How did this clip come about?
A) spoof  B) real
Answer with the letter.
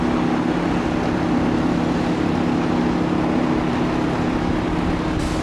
B